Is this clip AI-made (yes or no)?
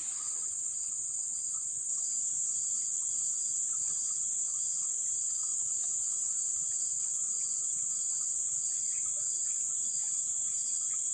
no